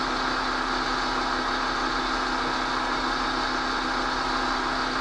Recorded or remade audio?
recorded